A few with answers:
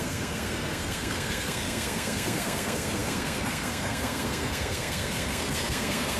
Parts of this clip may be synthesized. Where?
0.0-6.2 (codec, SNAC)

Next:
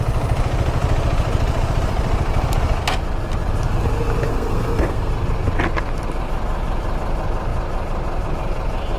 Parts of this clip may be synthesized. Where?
4.3-5.1 (codec, SNAC)